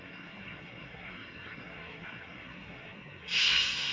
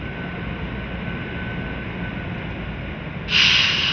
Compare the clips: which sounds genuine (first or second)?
second